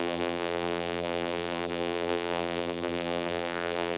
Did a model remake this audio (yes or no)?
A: yes